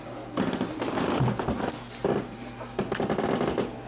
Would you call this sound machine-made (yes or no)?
no